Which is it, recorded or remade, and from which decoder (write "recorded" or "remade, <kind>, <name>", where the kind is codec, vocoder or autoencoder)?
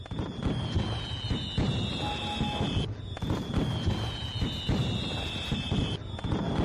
recorded